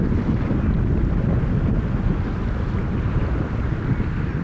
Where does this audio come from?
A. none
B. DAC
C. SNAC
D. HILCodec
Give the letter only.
A